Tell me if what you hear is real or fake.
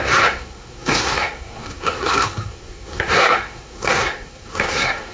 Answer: fake